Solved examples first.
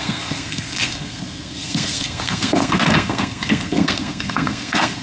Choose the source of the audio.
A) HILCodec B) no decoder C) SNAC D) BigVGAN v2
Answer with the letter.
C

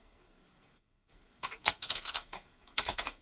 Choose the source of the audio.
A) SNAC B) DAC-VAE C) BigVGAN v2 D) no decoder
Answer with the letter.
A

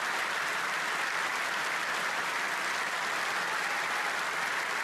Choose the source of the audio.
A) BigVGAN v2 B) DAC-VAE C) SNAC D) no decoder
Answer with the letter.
D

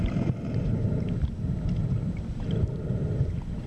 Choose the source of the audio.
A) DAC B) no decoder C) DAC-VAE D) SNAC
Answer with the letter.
B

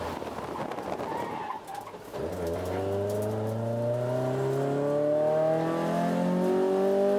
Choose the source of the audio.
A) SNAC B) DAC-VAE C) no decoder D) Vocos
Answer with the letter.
C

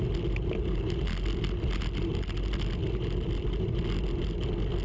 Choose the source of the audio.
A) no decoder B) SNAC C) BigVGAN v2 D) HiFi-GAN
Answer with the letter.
A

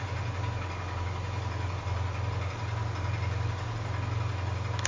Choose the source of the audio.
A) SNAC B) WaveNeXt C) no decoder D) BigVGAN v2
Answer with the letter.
C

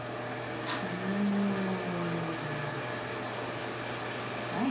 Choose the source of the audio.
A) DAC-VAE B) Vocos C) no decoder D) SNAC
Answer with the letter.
C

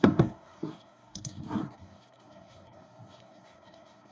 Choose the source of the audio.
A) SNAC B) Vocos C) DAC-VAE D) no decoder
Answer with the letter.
A